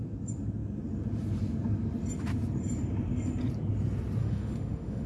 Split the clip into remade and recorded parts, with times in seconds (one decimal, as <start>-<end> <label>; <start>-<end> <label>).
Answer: 0.0-4.2 recorded; 4.2-5.1 remade